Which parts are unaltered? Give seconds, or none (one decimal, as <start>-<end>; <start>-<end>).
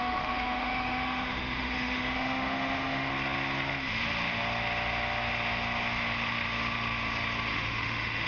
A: 3.1-7.5